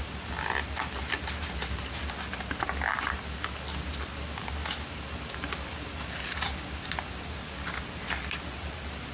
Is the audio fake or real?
real